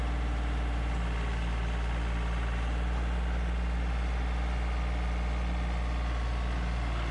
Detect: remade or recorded recorded